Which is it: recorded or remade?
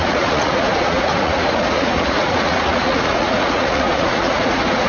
remade